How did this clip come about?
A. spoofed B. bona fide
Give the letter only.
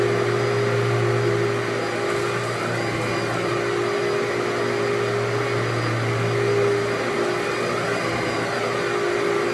B